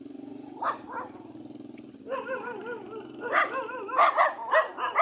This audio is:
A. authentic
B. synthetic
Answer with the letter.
B